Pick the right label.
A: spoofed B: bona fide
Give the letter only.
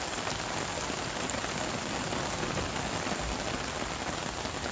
B